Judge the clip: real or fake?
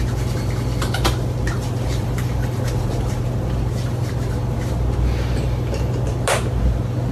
real